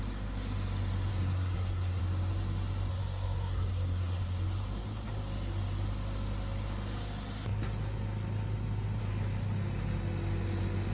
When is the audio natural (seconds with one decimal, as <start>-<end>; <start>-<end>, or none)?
0.0-1.1; 2.0-2.9; 4.2-10.9